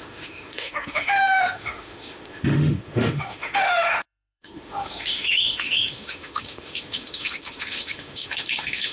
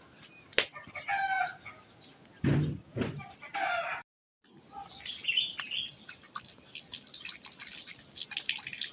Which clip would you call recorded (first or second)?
second